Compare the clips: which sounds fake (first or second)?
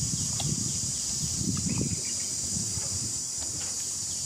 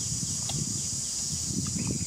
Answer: first